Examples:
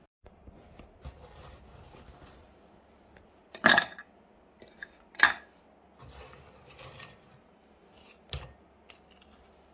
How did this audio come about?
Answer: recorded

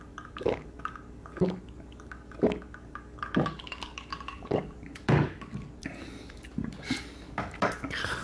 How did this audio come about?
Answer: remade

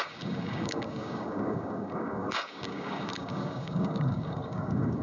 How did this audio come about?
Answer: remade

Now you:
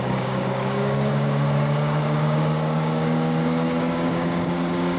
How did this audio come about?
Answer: remade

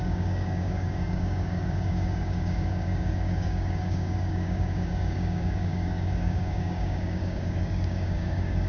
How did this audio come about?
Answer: remade